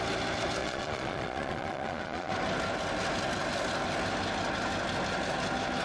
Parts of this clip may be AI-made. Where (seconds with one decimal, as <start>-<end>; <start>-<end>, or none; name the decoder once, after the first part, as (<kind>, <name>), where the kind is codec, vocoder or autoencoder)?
0.6-2.3 (vocoder, Vocos)